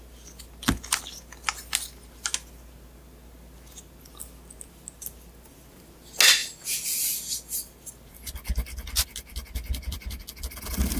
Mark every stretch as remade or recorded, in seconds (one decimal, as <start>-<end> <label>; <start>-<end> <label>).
0.0-11.0 recorded